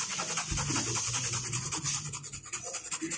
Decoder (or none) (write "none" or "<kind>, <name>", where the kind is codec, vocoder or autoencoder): none